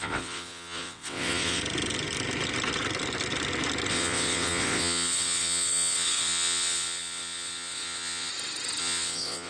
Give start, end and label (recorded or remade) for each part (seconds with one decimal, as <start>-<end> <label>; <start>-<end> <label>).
0.0-1.6 remade; 1.6-3.9 recorded; 3.9-8.3 remade; 8.3-8.8 recorded; 8.8-9.5 remade